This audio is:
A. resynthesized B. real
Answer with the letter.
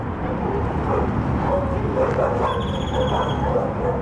B